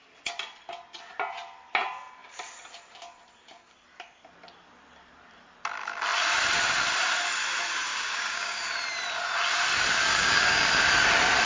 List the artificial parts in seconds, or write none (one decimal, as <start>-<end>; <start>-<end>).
7.9-8.6; 10.1-10.7